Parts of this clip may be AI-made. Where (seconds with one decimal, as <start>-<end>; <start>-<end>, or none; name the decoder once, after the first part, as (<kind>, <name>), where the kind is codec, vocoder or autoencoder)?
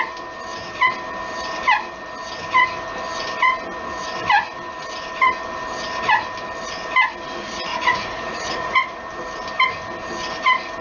7.7-9.0 (vocoder, Vocos)